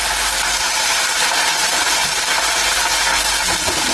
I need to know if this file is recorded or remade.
recorded